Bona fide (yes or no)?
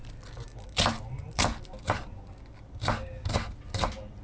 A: yes